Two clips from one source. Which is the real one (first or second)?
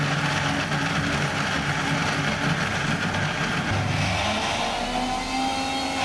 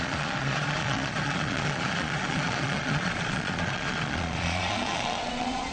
first